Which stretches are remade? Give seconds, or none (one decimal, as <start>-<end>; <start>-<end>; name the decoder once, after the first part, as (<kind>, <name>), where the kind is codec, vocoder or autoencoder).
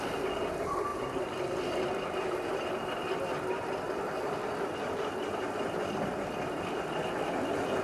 none